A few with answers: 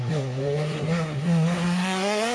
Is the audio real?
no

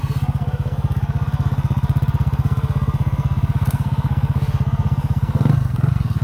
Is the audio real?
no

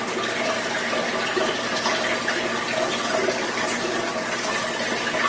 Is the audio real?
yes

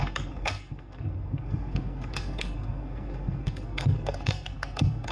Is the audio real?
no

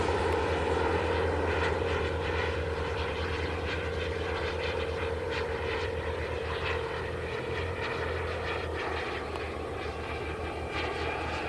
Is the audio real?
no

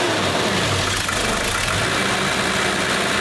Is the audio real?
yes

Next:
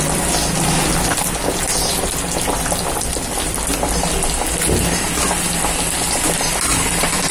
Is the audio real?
yes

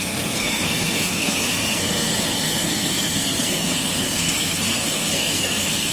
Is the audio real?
no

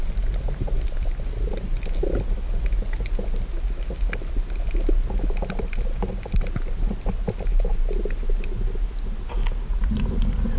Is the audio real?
yes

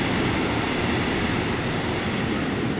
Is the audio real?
yes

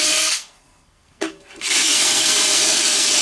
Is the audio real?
no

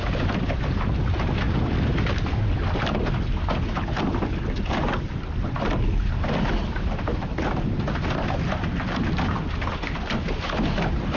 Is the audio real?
yes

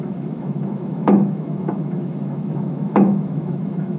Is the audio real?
no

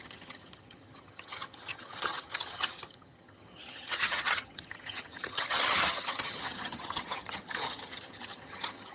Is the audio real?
no